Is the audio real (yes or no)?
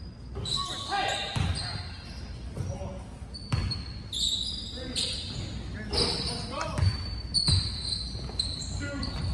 yes